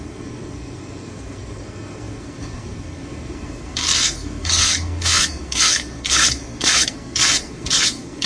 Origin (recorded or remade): remade